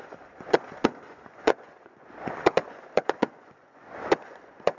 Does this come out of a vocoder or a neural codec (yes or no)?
yes